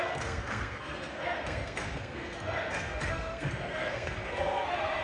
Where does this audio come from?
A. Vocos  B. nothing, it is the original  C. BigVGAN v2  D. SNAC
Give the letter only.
D